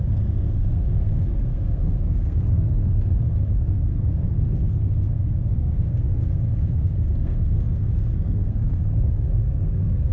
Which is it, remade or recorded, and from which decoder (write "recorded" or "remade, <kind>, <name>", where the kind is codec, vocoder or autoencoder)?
remade, codec, SNAC